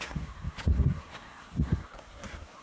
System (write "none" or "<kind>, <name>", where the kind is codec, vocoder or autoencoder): codec, SNAC